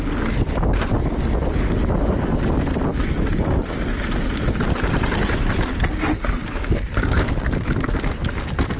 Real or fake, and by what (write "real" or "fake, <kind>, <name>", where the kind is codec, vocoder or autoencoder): real